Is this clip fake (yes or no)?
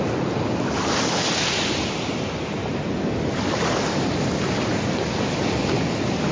no